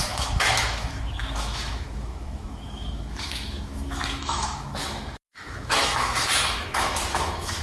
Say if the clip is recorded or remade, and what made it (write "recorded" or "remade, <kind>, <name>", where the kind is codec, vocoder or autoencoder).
remade, autoencoder, DAC-VAE